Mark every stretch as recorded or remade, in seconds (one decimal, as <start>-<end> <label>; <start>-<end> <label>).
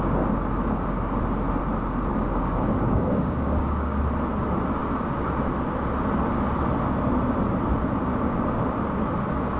0.0-2.1 recorded; 2.1-4.0 remade; 4.0-9.6 recorded